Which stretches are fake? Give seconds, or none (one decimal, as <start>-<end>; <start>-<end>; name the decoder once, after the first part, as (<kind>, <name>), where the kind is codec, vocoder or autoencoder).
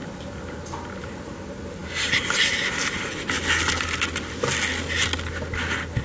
none